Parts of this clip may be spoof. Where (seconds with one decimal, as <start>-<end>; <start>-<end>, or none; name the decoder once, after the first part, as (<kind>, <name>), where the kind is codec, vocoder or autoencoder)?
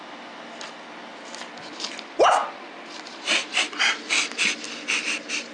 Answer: none